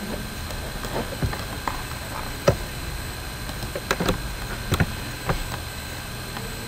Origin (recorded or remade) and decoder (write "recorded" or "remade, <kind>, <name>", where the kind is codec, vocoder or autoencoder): recorded